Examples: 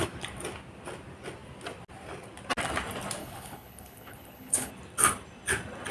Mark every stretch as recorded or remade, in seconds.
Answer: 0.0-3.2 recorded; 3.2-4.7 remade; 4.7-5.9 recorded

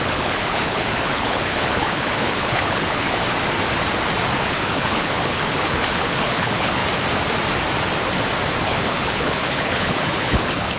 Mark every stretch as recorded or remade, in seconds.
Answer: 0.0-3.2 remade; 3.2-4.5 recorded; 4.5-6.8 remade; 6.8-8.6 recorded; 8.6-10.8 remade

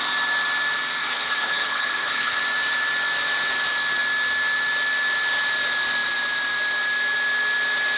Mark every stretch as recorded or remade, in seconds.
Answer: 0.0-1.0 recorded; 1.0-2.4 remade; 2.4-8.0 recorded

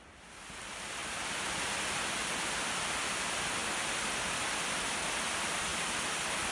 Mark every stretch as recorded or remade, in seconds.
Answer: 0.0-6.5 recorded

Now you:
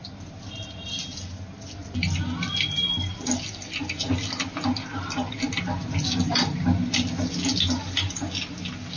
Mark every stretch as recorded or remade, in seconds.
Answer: 0.0-9.0 recorded

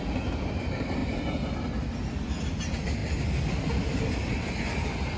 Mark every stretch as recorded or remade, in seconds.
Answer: 0.0-5.2 recorded

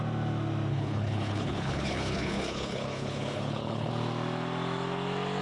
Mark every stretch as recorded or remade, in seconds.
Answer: 0.0-0.7 recorded; 0.7-3.9 remade; 3.9-5.4 recorded